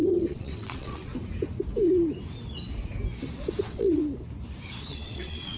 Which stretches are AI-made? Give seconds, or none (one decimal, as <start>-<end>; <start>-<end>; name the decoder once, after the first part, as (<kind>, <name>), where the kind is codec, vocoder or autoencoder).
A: 0.0-1.1 (vocoder, WaveNeXt); 3.6-4.0; 4.9-5.6